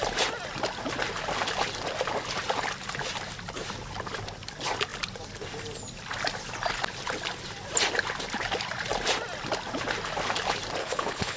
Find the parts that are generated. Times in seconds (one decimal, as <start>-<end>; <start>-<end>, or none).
10.8-11.4